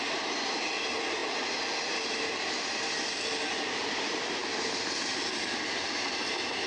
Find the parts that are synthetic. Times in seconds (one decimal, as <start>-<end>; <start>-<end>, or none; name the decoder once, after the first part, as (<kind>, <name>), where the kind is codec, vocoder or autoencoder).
none